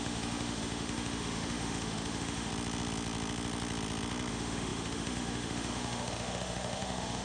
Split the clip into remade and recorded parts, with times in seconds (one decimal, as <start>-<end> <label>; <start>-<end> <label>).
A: 0.0-2.5 remade; 2.5-4.3 recorded; 4.3-7.2 remade